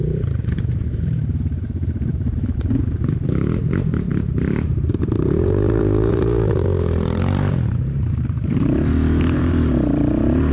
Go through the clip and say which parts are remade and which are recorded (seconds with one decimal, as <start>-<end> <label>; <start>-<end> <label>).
0.0-10.5 remade